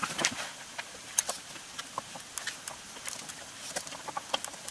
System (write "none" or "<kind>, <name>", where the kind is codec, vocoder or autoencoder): none